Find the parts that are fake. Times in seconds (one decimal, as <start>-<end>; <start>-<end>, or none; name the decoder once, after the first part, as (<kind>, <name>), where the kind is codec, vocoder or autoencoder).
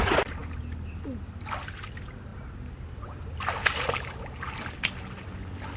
none